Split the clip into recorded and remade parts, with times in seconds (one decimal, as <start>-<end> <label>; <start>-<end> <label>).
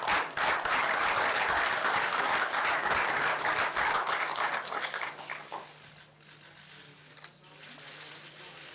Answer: 0.0-0.8 recorded; 0.8-5.5 remade; 5.5-8.7 recorded